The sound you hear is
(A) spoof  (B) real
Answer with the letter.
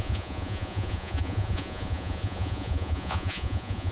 A